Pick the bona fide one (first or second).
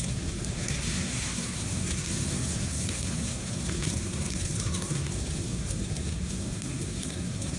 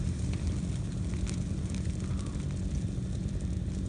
second